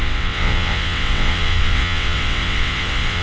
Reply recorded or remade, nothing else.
remade